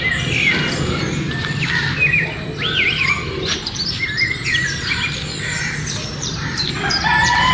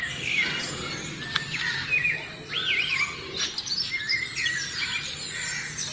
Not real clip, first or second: first